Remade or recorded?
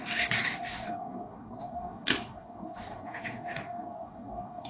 remade